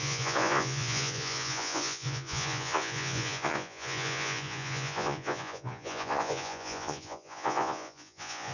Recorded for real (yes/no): no